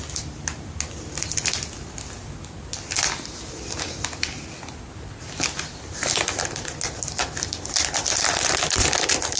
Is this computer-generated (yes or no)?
no